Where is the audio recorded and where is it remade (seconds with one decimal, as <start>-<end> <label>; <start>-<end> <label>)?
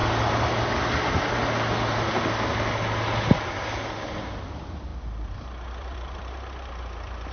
0.0-4.4 recorded; 4.4-7.3 remade